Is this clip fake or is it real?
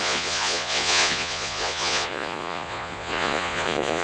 fake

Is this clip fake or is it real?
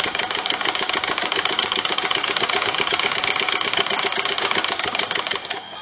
fake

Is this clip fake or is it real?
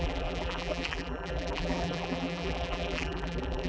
fake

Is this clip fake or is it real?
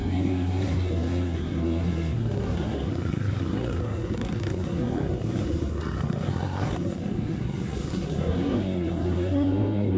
fake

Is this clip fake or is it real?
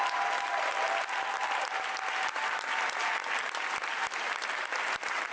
real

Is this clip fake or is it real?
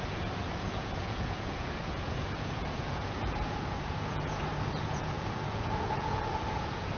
fake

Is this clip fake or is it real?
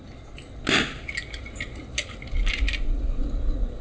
real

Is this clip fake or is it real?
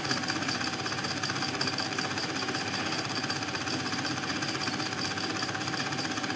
fake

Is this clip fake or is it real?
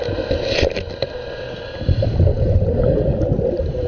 real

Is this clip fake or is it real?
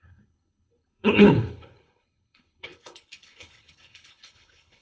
fake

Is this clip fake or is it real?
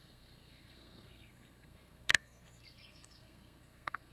fake